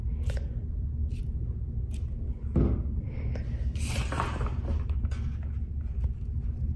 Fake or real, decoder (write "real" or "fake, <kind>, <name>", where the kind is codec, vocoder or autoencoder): real